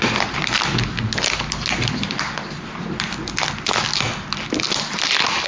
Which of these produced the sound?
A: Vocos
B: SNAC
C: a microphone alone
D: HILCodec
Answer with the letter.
C